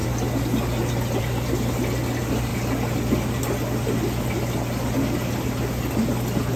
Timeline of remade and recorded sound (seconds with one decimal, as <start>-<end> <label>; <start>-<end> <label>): 0.0-6.6 recorded